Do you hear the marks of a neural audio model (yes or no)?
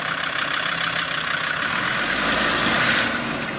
no